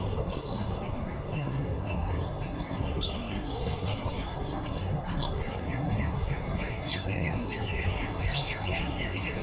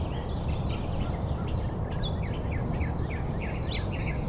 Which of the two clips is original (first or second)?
second